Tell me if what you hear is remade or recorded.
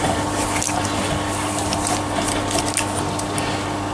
recorded